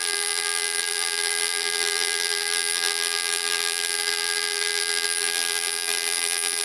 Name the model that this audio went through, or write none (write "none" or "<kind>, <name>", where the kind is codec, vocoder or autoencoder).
vocoder, BigVGAN v2